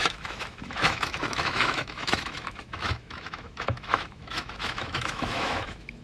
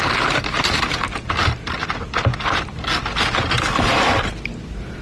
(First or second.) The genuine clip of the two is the second